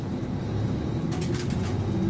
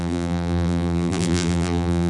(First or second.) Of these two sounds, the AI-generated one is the second